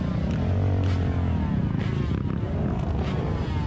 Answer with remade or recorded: recorded